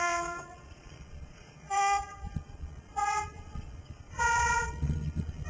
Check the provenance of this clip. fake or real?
fake